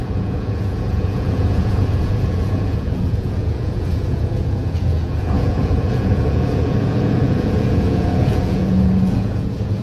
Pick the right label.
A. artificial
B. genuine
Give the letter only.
A